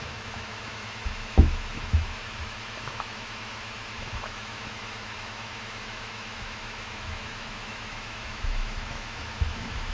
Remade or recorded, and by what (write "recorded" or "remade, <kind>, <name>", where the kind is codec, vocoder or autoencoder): remade, autoencoder, DAC-VAE